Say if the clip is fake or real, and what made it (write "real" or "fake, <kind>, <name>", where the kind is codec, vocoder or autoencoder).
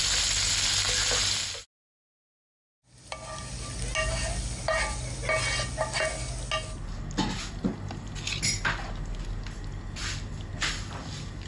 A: real